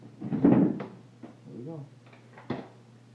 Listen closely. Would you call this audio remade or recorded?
recorded